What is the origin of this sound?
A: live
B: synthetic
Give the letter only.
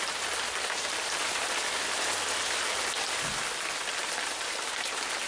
A